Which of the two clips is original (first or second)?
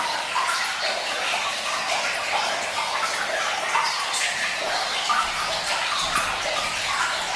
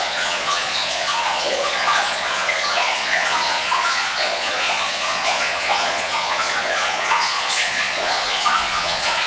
first